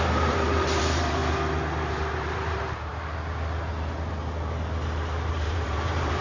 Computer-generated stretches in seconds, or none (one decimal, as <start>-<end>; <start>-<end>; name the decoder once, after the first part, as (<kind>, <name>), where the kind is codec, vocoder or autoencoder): 0.0-1.2 (vocoder, BigVGAN v2); 1.9-2.9; 5.3-6.2